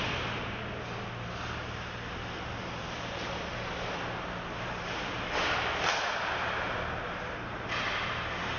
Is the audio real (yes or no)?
yes